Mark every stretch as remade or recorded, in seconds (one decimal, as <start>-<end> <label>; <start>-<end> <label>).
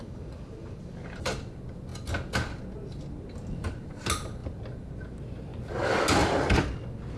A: 0.0-6.2 recorded; 6.2-6.7 remade; 6.7-7.2 recorded